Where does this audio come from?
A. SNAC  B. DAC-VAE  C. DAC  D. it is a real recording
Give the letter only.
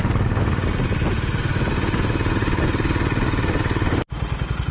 D